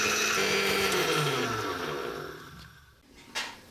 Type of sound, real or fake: real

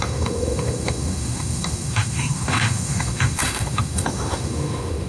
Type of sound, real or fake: fake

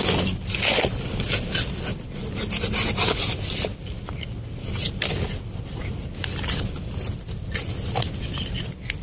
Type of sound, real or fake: real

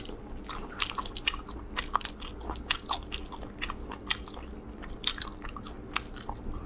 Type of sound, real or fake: real